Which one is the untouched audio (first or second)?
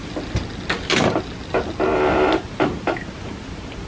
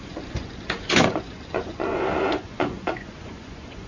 first